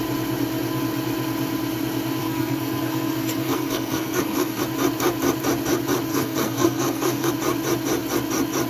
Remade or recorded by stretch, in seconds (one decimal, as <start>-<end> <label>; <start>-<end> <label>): 0.0-2.2 recorded; 2.2-4.6 remade; 4.6-6.1 recorded; 6.1-7.3 remade; 7.3-8.7 recorded